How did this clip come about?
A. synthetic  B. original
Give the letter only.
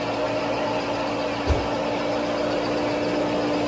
B